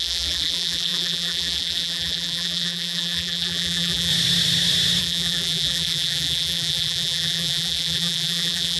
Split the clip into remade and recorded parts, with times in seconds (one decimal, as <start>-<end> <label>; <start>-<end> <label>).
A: 0.0-4.1 remade; 4.1-5.0 recorded; 5.0-8.8 remade